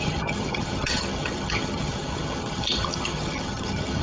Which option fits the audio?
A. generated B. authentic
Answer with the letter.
A